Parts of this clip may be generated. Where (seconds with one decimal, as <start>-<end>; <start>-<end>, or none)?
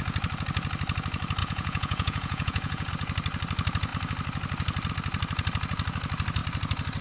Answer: 1.4-2.9